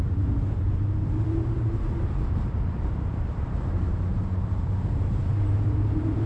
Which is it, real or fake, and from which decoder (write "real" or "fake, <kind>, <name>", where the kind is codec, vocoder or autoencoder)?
fake, vocoder, BigVGAN v2